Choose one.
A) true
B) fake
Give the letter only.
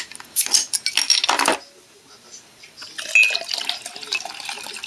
A